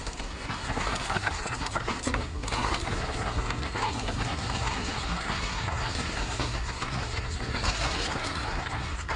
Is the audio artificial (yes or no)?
yes